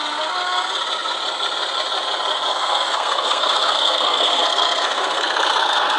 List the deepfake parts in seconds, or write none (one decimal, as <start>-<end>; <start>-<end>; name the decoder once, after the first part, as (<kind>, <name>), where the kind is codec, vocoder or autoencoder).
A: 2.5-6.0 (codec, SNAC)